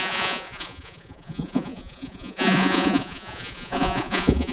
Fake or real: fake